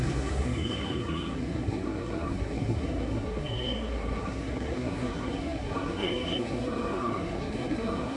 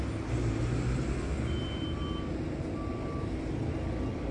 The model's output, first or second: first